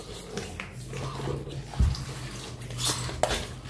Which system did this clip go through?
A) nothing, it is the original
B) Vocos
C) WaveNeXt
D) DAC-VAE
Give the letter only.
A